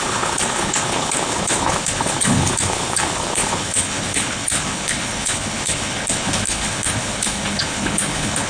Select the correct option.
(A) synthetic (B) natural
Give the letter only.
A